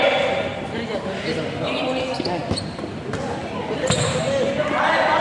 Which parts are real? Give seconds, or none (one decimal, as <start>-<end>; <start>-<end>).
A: 0.0-5.2